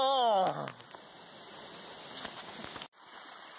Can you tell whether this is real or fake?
real